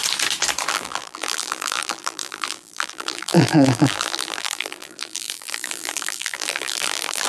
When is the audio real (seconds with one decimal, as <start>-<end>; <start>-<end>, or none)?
0.0-0.7